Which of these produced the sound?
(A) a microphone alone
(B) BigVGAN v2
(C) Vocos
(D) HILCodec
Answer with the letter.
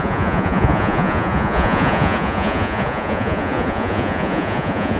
C